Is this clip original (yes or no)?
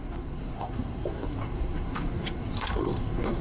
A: no